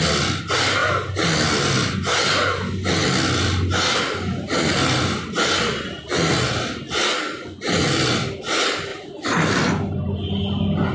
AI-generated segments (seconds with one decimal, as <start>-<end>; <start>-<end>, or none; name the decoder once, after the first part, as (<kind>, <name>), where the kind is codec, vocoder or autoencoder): 8.9-9.5 (vocoder, BigVGAN v2)